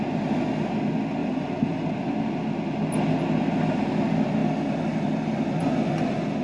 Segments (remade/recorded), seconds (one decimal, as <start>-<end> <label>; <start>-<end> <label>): 0.0-1.2 recorded; 1.2-1.9 remade; 1.9-4.4 recorded; 4.4-6.4 remade